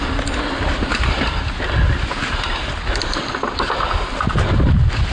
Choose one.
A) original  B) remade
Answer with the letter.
A